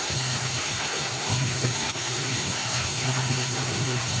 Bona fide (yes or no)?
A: no